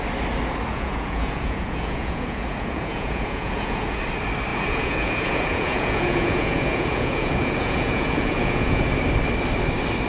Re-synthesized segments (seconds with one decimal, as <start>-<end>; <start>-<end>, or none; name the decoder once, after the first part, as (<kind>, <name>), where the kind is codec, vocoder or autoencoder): 0.7-4.0 (vocoder, Vocos); 4.5-9.0